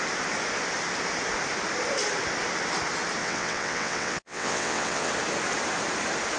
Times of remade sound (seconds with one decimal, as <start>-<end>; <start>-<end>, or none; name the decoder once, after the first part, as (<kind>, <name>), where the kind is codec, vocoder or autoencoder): 3.2-5.1 (vocoder, WaveNeXt)